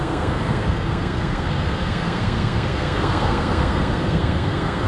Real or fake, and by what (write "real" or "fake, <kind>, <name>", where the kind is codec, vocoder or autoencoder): fake, codec, SNAC